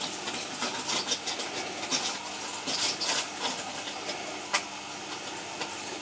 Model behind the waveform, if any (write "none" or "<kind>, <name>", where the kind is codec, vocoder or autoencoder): none